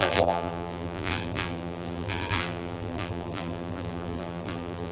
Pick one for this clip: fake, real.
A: fake